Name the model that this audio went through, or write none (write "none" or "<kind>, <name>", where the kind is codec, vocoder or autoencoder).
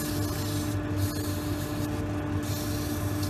none